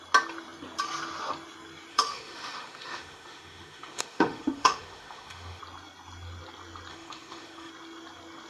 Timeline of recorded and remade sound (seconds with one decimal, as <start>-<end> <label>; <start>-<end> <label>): 0.0-1.9 recorded; 1.9-5.6 remade; 5.6-6.9 recorded; 6.9-7.7 remade; 7.7-8.5 recorded